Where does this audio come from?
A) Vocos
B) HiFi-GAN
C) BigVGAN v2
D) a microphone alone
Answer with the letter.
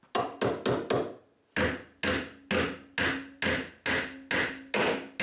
D